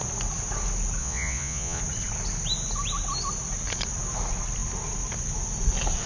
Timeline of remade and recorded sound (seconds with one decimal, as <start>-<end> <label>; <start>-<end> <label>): 0.0-1.0 recorded; 1.0-1.8 remade; 1.8-6.1 recorded